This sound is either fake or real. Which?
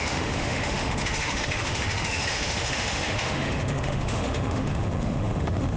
fake